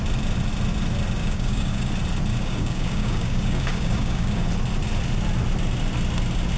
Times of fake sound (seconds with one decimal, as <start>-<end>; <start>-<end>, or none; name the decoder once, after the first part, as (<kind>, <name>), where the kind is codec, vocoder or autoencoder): 1.2-1.9 (codec, DAC); 2.3-4.5